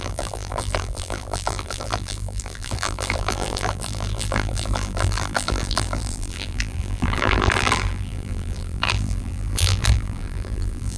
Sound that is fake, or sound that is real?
fake